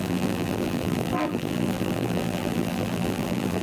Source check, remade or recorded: remade